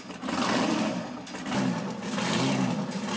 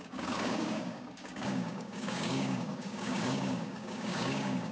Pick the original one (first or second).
first